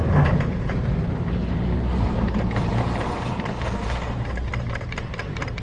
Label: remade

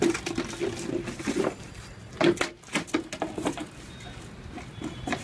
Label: recorded